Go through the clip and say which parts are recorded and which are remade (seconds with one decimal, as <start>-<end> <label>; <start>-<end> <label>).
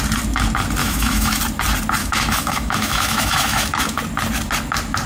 0.0-0.8 recorded; 0.8-1.4 remade; 1.4-2.0 recorded; 2.0-4.0 remade; 4.0-5.1 recorded